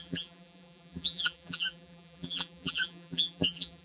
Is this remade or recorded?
remade